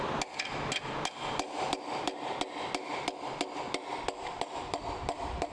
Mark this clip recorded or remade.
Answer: recorded